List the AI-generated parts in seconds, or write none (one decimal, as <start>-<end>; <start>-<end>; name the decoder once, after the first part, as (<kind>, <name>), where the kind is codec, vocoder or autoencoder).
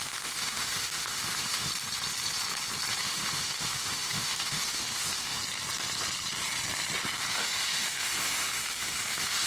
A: 0.0-1.7 (autoencoder, DAC-VAE); 3.0-5.4; 7.3-9.5